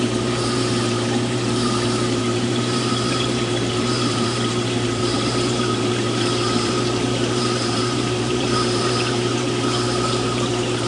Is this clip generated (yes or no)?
yes